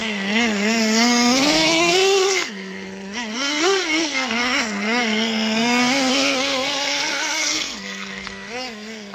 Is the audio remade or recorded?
remade